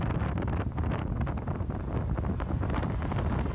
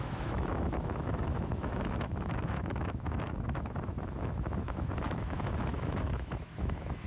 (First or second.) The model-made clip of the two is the second